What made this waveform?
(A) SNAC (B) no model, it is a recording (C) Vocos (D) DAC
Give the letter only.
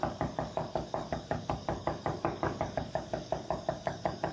D